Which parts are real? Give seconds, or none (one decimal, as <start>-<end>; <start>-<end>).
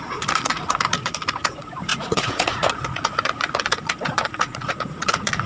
none